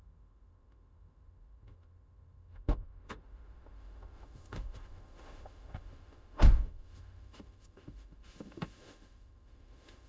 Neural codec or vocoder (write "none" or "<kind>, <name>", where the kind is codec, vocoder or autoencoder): autoencoder, DAC-VAE